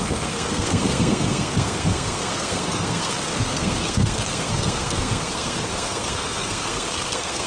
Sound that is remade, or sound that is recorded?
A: remade